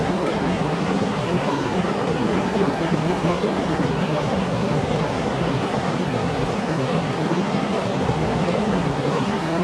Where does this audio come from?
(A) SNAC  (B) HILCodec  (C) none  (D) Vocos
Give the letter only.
A